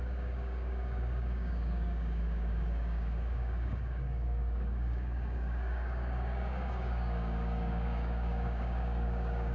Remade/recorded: remade